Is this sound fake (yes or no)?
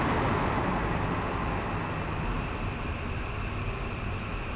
no